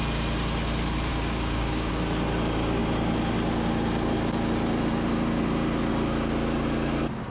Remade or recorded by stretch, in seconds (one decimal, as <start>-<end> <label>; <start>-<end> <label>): 0.0-1.1 recorded; 1.1-1.9 remade; 1.9-7.3 recorded